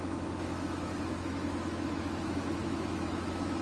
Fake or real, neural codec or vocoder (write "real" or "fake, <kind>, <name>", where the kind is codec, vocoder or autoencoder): fake, autoencoder, DAC-VAE